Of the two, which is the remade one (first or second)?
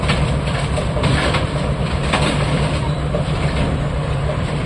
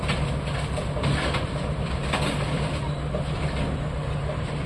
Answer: first